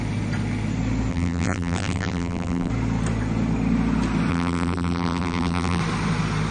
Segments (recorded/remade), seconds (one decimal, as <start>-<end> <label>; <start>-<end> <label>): 0.0-1.1 recorded; 1.1-2.7 remade; 2.7-4.3 recorded; 4.3-5.8 remade; 5.8-6.5 recorded